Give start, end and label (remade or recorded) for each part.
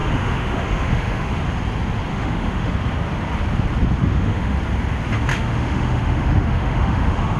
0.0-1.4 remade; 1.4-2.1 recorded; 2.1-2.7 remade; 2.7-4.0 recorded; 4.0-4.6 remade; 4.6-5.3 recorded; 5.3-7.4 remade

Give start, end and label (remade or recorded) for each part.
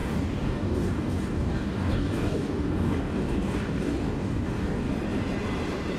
0.0-4.9 remade; 4.9-6.0 recorded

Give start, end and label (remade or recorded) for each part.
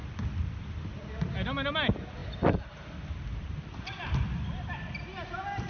0.0-5.7 recorded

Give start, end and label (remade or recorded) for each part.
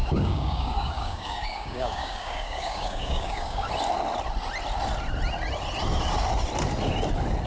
0.0-3.7 remade; 3.7-7.5 recorded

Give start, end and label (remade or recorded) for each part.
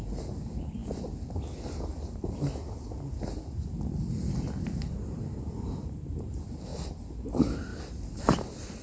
0.0-8.8 recorded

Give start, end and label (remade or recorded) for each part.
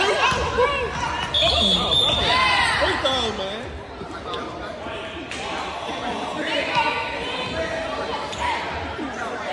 0.0-9.5 recorded